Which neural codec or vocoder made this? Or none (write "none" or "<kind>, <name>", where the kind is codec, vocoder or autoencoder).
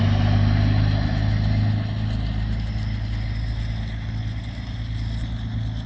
none